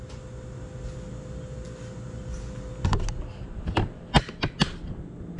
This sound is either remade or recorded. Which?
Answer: recorded